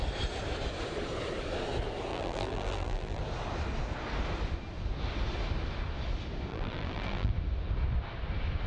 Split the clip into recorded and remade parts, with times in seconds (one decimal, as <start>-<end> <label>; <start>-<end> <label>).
0.0-2.1 recorded; 2.1-3.2 remade; 3.2-6.5 recorded; 6.5-7.3 remade; 7.3-8.7 recorded